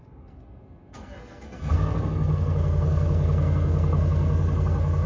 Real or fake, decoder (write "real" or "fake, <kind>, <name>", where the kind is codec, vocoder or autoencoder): fake, codec, SNAC